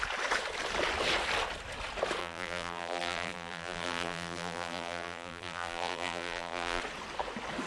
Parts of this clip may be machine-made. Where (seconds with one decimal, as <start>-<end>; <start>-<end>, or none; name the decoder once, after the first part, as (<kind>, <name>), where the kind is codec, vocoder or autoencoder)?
2.2-6.8 (vocoder, BigVGAN v2)